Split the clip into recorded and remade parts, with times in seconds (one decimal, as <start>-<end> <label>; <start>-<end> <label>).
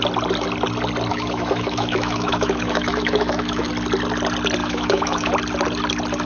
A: 0.0-1.1 recorded; 1.1-3.7 remade; 3.7-4.6 recorded; 4.6-5.3 remade; 5.3-6.3 recorded